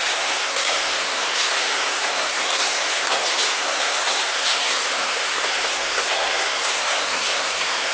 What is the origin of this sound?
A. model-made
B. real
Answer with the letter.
A